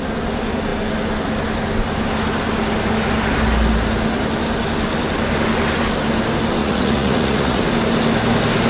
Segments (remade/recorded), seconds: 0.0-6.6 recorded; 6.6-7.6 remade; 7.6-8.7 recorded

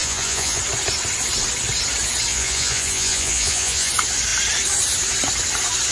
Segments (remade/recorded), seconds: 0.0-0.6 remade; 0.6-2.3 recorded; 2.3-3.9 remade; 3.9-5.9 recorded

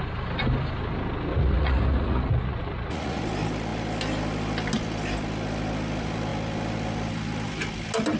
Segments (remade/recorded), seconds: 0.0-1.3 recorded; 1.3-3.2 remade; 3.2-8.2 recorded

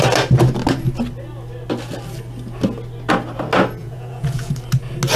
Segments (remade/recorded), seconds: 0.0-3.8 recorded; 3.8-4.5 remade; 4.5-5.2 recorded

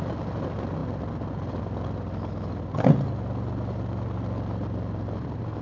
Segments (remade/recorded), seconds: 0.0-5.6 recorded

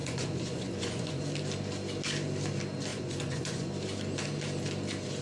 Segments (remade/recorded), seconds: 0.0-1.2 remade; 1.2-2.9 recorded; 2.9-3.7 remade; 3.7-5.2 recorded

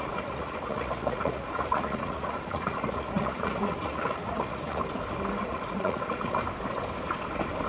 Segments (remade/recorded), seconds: 0.0-4.8 remade; 4.8-5.4 recorded; 5.4-6.4 remade; 6.4-7.7 recorded